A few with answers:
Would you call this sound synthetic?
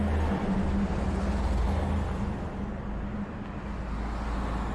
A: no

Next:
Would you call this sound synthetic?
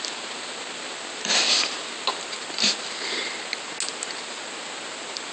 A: no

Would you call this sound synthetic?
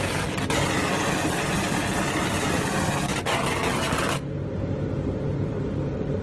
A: no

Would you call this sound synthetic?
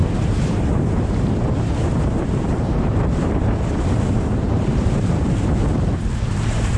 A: yes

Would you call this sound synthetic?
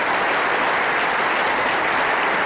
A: no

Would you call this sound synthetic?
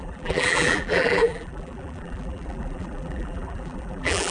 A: yes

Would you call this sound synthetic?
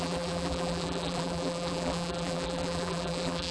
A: yes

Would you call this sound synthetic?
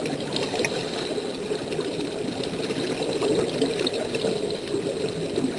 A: no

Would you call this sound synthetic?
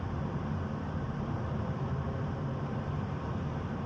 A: yes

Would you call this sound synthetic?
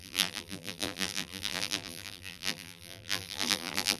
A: yes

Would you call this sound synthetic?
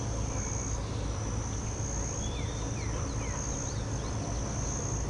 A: no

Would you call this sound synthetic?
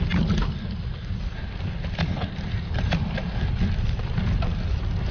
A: no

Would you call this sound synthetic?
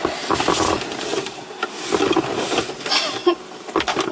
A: no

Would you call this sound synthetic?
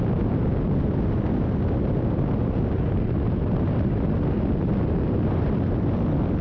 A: no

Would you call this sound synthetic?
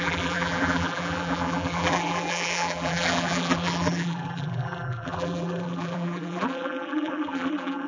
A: yes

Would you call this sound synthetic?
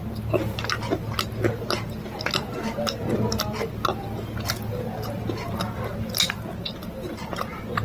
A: no